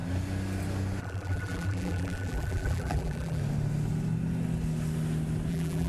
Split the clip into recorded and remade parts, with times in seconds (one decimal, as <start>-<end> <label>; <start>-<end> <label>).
0.0-1.0 recorded; 1.0-3.4 remade; 3.4-5.5 recorded; 5.5-5.9 remade